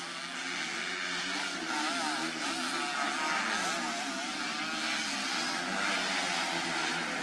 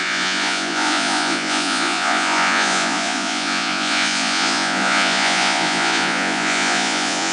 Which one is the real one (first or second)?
first